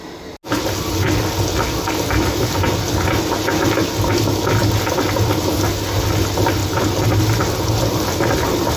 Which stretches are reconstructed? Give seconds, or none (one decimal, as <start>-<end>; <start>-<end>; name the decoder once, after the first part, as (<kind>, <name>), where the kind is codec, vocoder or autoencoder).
none

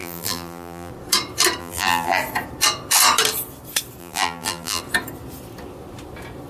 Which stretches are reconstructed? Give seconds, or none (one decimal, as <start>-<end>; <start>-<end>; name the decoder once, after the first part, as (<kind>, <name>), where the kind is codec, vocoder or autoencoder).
0.0-0.9 (vocoder, BigVGAN v2); 1.6-2.2; 4.0-4.8

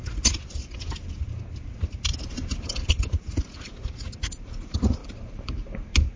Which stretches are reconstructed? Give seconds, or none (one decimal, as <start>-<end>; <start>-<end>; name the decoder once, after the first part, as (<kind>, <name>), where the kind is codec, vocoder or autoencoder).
5.0-6.2 (vocoder, BigVGAN v2)

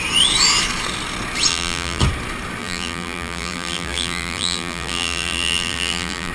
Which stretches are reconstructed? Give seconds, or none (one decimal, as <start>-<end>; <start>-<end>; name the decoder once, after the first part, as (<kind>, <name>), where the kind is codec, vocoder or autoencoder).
1.5-2.0 (vocoder, BigVGAN v2); 2.6-6.3